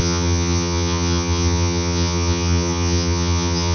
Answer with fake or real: fake